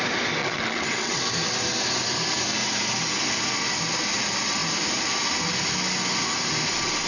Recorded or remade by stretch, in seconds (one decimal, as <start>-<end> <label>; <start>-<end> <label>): 0.0-0.4 recorded; 0.4-1.2 remade; 1.2-7.1 recorded